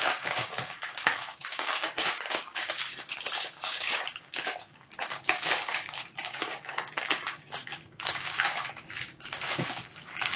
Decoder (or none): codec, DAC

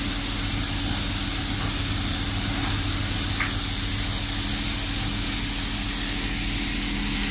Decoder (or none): none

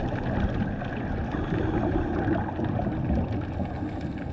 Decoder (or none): none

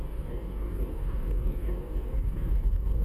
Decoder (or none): codec, DAC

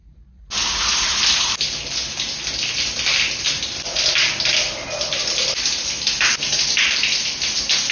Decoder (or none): none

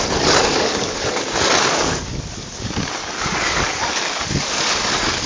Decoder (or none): codec, DAC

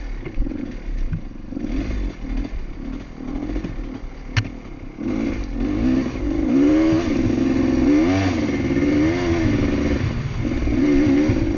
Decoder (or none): none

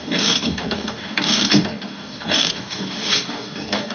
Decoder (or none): codec, DAC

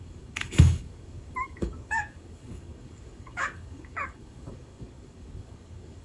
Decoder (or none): codec, DAC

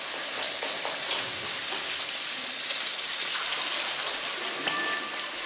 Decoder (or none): none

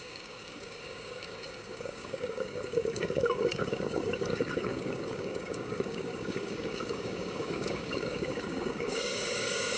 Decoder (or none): codec, DAC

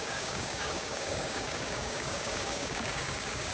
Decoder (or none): codec, DAC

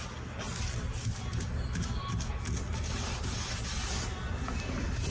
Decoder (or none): none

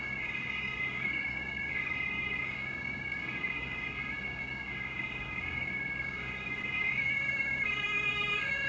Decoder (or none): codec, DAC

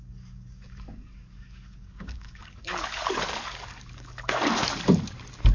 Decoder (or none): codec, DAC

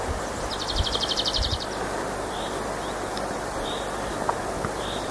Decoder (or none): none